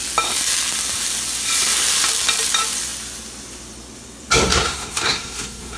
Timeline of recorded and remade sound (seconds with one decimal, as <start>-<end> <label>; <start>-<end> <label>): 0.0-4.5 recorded; 4.5-5.8 remade